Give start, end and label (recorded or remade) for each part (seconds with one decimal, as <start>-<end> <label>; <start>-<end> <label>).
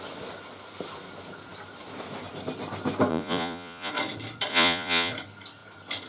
0.0-3.1 recorded; 3.1-3.9 remade; 3.9-4.5 recorded; 4.5-5.1 remade; 5.1-6.1 recorded